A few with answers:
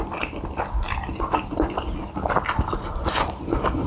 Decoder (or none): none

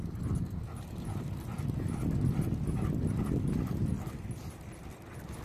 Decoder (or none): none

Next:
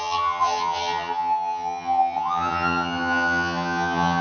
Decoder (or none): vocoder, HiFi-GAN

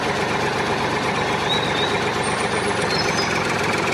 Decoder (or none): vocoder, BigVGAN v2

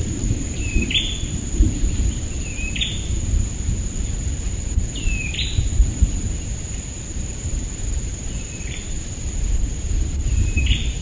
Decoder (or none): vocoder, BigVGAN v2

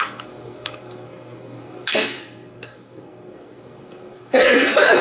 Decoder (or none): codec, SNAC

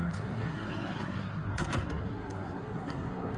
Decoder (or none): codec, SNAC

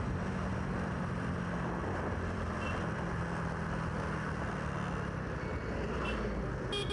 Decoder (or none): none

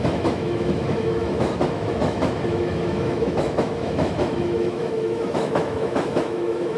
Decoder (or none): autoencoder, DAC-VAE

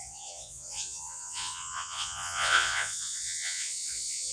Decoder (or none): vocoder, Vocos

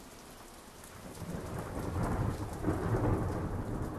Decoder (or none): none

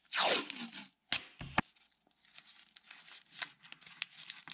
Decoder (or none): none